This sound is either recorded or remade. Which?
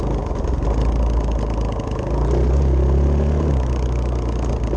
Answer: recorded